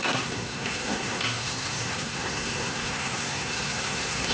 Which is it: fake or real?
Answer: fake